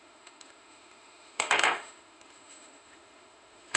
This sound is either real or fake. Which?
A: fake